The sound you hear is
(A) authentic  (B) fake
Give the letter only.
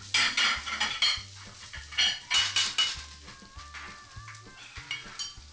A